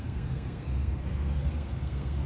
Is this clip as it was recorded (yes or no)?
no